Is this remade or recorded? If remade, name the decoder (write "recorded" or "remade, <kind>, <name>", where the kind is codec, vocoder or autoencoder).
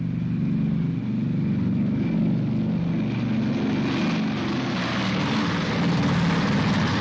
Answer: recorded